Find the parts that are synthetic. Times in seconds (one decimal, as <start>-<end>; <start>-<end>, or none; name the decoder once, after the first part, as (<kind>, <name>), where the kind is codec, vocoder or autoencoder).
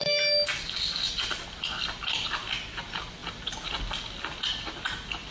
none